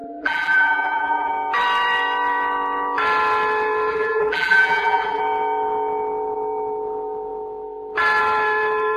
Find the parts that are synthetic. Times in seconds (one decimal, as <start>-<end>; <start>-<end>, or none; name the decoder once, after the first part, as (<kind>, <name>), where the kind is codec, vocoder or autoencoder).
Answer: 0.0-1.3 (vocoder, BigVGAN v2); 3.9-5.2